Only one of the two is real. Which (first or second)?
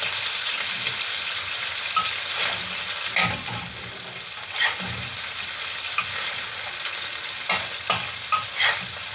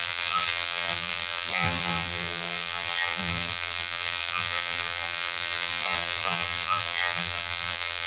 first